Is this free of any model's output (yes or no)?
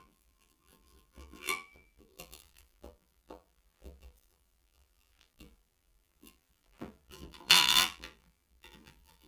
no